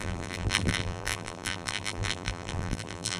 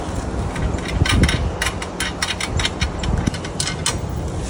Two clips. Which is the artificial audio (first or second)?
first